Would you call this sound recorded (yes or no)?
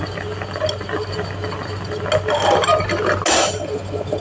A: yes